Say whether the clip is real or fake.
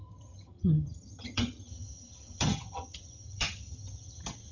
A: fake